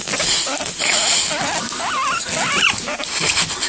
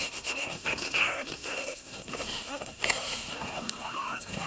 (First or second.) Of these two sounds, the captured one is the first